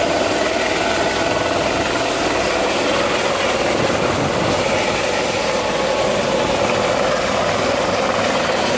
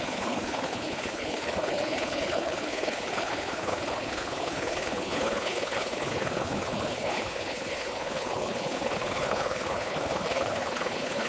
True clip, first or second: first